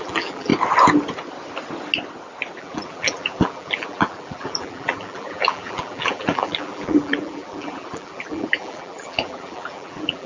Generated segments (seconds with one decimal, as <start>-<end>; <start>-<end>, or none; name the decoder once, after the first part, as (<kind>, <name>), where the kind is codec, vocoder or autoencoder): 0.0-0.5 (vocoder, BigVGAN v2); 2.6-10.3